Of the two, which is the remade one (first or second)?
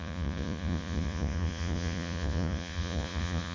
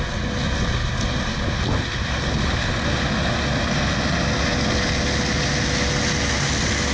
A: first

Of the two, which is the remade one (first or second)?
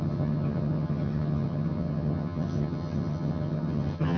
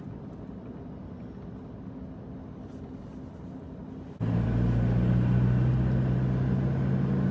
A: first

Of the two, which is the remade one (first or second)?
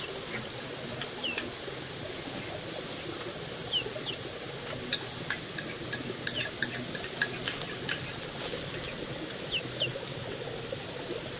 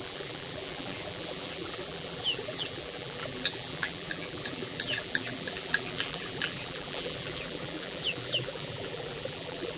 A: second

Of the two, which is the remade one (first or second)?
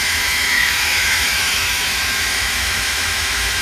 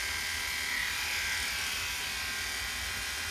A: first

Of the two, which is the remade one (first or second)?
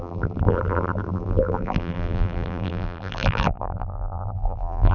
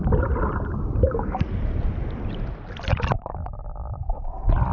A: first